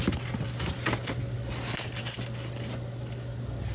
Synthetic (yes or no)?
no